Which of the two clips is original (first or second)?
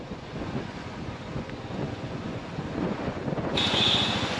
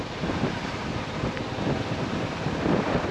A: second